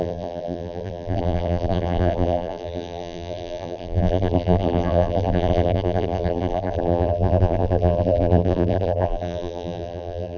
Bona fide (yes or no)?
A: no